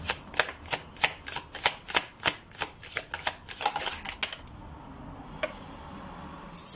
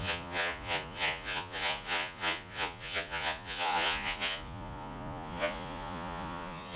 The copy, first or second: second